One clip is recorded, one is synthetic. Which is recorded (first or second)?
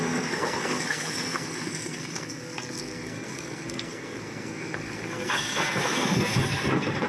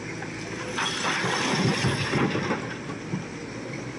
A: second